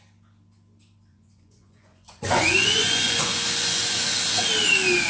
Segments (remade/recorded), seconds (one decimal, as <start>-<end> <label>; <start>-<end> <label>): 0.0-1.1 recorded; 1.1-4.2 remade; 4.2-5.1 recorded